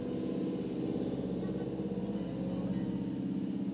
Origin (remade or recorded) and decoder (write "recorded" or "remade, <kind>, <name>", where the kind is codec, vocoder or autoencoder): recorded